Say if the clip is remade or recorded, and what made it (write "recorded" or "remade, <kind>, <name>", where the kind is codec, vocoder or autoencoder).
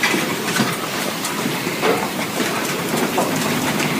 remade, vocoder, BigVGAN v2